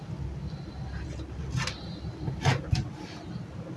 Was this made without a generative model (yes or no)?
yes